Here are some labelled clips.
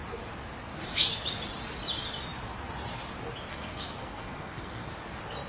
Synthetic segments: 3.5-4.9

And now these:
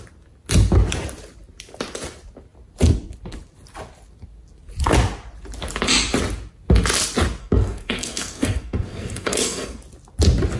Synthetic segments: 7.4-9.8

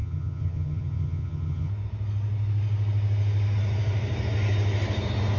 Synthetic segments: 0.0-1.7

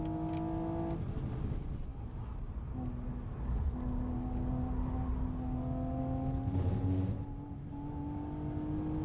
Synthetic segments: none

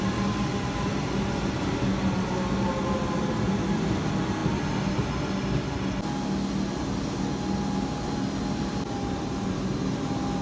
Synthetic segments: none